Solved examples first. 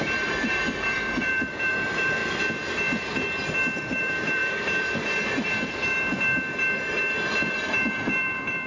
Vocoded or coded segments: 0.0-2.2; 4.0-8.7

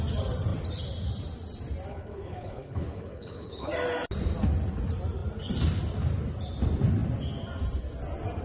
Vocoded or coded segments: 1.9-3.7

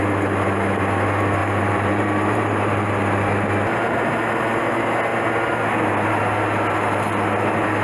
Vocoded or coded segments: 1.4-2.9

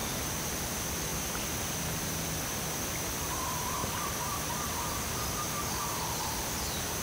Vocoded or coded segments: 0.0-0.5; 3.8-4.7

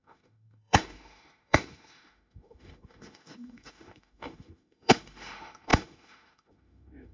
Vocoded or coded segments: 0.0-7.1

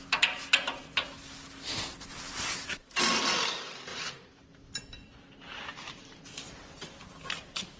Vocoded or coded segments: 2.8-3.4; 5.7-6.2